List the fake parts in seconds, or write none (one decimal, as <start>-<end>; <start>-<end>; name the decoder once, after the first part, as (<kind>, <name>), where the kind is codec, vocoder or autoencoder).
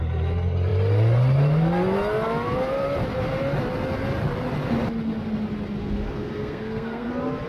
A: 5.8-7.1 (codec, SNAC)